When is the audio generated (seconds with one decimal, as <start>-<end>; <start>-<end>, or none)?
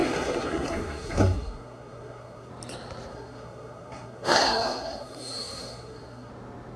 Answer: 0.0-2.5; 3.1-6.3